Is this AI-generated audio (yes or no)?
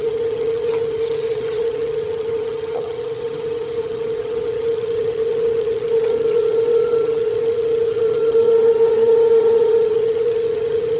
yes